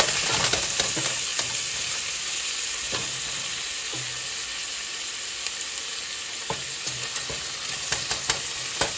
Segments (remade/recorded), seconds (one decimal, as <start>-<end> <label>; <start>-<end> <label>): 0.0-9.0 recorded